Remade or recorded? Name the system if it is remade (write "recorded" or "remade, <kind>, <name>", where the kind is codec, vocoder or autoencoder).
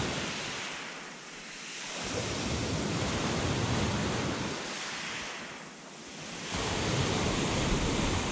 recorded